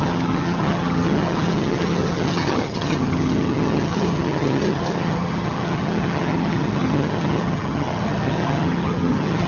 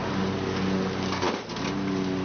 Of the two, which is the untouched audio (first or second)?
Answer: second